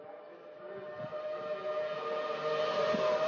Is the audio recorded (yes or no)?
yes